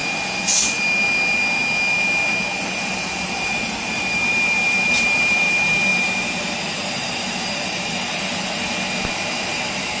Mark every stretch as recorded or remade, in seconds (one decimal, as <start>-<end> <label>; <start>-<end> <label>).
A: 0.0-2.6 recorded; 2.6-10.0 remade